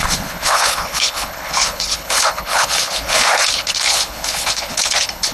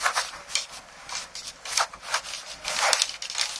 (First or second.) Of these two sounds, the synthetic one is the first